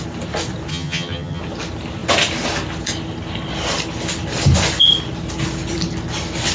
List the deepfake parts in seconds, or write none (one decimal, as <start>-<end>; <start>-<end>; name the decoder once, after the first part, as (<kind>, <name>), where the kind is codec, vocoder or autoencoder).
0.7-1.4 (vocoder, HiFi-GAN)